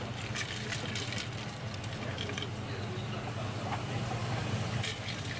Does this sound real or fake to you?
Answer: real